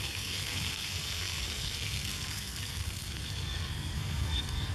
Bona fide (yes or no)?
no